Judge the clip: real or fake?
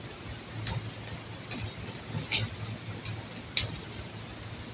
real